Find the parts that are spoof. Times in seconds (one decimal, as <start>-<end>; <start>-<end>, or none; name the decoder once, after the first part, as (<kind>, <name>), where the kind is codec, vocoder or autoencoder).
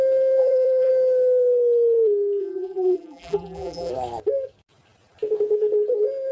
0.4-0.9 (vocoder, BigVGAN v2); 2.4-3.9